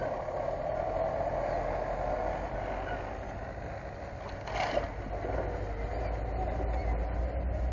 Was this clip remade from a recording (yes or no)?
no